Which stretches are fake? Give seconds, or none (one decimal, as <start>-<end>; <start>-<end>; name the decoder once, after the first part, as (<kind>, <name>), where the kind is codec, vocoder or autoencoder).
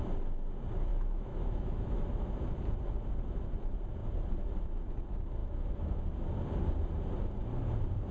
0.9-2.0 (autoencoder, DAC-VAE); 5.4-6.0